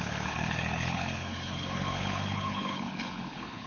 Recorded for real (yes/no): no